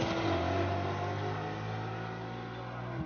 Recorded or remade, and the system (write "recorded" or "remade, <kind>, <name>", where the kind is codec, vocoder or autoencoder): recorded